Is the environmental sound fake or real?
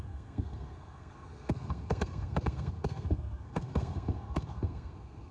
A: fake